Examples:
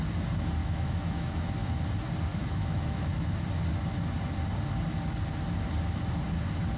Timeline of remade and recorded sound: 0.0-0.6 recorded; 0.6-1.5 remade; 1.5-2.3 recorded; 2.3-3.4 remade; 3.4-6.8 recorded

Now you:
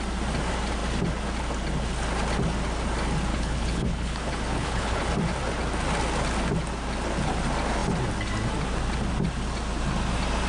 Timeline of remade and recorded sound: 0.0-3.3 recorded; 3.3-5.1 remade; 5.1-10.5 recorded